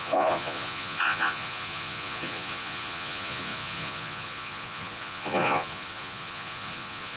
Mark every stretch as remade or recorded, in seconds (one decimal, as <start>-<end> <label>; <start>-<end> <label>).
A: 0.0-7.2 remade